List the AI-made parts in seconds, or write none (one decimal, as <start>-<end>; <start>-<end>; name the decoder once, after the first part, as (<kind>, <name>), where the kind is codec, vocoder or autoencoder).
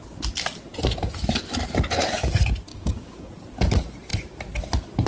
2.7-3.3 (codec, DAC)